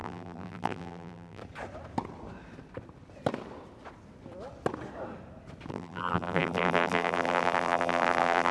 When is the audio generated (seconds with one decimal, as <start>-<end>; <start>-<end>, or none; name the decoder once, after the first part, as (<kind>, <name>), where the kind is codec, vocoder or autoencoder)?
0.0-1.4 (vocoder, BigVGAN v2); 5.7-8.5